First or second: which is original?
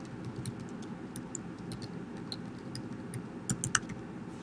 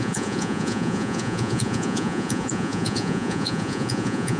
first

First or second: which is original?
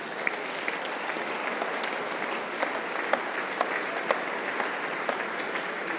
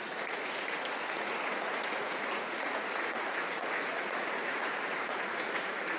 first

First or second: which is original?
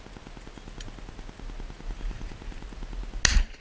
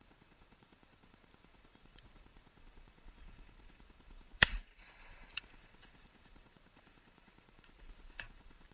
first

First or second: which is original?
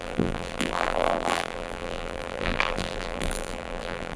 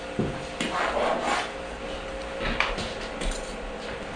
second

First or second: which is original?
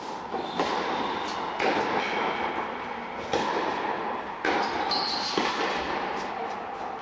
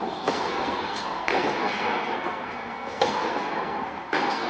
first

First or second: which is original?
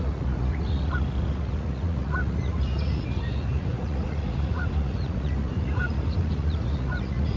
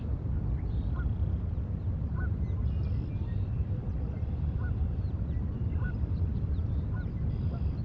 second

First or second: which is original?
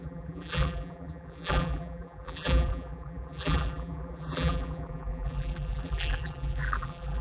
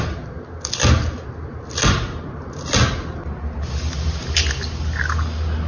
second